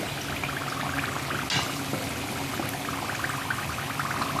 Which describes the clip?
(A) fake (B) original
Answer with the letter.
B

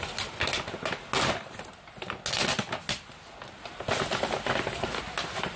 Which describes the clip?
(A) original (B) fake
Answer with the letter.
A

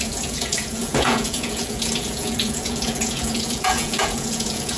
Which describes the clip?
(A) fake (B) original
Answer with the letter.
A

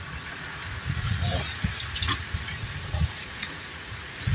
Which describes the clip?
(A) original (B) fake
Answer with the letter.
B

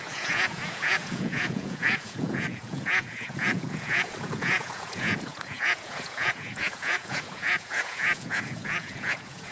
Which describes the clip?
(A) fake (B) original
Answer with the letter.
A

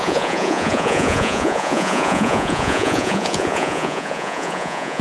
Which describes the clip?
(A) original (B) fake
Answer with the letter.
B